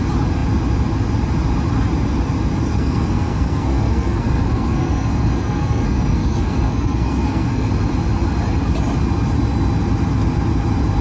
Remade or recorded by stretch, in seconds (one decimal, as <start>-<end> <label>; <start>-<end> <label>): 0.0-2.7 recorded; 2.7-7.7 remade; 7.7-11.0 recorded